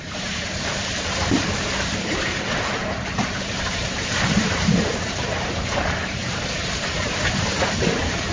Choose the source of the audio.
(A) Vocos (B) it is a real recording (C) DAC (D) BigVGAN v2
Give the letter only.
D